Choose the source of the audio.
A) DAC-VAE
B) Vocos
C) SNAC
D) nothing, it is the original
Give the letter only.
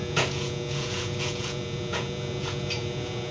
B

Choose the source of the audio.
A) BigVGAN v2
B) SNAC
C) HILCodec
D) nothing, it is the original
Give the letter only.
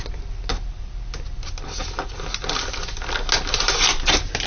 D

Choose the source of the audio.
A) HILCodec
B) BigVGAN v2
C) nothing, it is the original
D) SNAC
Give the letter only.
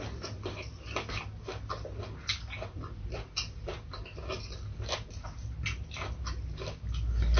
C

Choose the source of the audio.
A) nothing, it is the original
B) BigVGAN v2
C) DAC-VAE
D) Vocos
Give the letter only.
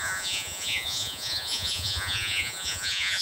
D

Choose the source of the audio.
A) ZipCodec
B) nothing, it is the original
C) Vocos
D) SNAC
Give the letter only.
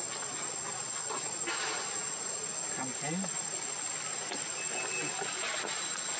B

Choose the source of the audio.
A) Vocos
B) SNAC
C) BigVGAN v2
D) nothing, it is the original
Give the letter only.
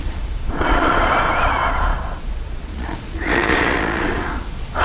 A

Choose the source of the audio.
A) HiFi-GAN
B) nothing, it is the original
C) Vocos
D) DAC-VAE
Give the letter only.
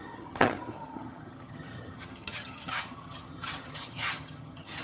A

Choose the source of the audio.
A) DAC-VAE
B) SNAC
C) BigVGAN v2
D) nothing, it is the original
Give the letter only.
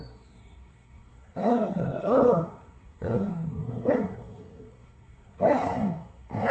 B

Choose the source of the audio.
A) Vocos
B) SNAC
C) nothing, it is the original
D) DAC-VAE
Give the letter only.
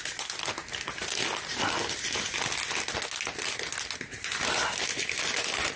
C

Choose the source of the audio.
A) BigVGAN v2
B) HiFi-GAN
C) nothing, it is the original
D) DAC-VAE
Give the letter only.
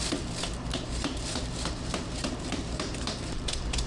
A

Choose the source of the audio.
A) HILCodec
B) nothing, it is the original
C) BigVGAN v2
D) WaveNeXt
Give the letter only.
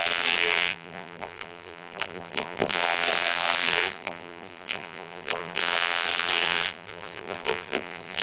C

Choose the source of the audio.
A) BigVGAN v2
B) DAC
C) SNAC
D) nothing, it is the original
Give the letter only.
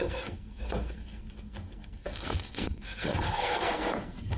C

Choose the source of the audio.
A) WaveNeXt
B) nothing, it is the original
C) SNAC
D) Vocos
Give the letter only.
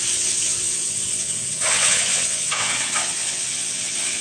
A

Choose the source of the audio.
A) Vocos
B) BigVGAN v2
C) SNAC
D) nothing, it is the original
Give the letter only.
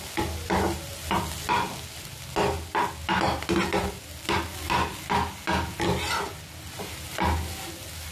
D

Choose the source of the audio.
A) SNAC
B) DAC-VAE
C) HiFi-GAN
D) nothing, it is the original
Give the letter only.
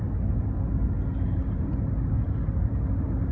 D